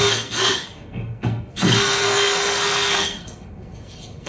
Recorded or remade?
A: remade